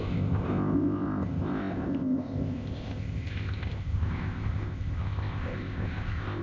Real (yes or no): no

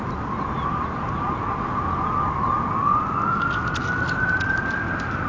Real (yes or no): yes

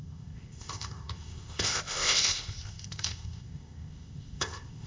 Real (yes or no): no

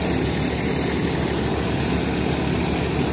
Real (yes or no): yes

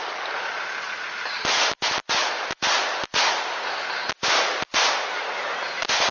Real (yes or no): yes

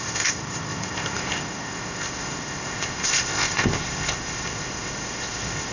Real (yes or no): no